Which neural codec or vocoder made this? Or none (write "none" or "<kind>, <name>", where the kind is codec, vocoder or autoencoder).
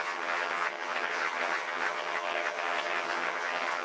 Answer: vocoder, HiFi-GAN